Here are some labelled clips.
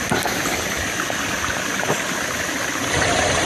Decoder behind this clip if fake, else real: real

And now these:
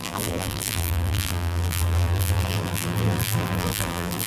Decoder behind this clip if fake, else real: fake, vocoder, BigVGAN v2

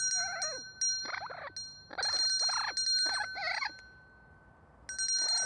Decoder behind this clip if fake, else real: real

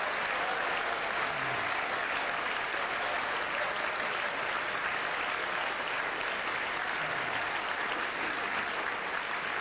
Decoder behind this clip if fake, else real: real